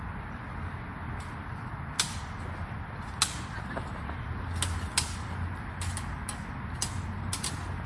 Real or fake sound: real